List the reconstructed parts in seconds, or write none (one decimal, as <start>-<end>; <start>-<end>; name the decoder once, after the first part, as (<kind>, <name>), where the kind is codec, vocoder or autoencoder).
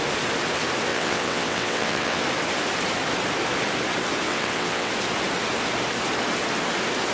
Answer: 0.9-2.2 (vocoder, WaveNeXt); 4.3-4.9